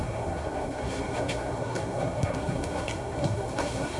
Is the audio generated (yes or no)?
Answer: yes